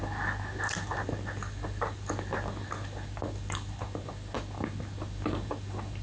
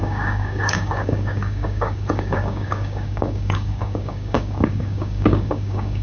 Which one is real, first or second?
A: first